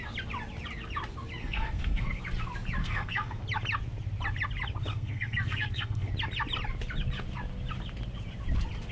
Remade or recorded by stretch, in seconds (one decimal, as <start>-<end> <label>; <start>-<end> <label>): 0.0-1.4 recorded; 1.4-2.2 remade; 2.2-2.8 recorded; 2.8-3.4 remade; 3.4-4.9 recorded; 4.9-6.1 remade; 6.1-8.9 recorded